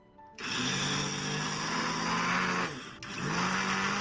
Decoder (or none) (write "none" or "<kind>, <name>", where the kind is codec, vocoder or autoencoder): none